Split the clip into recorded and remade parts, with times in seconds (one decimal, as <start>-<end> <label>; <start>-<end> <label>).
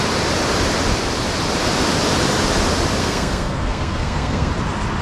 0.0-3.0 recorded; 3.0-4.5 remade; 4.5-5.0 recorded